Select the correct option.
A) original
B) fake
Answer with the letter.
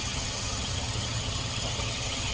B